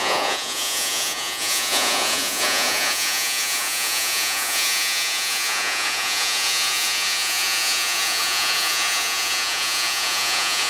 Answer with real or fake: fake